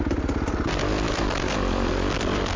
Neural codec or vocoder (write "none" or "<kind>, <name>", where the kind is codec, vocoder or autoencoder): none